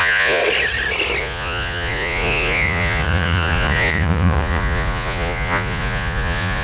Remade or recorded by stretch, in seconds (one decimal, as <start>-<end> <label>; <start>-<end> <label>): 0.0-0.4 remade; 0.4-1.2 recorded; 1.2-6.6 remade